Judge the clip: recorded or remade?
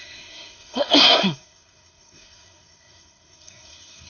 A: remade